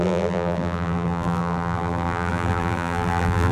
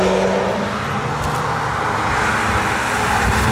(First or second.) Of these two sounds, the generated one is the first